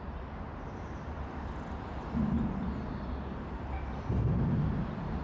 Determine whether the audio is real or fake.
real